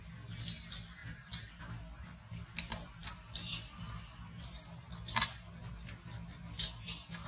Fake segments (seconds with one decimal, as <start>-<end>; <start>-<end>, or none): 1.0-1.6